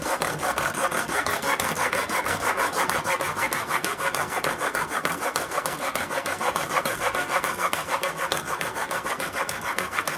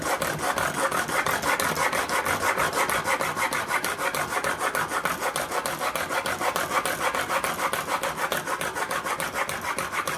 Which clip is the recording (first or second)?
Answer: second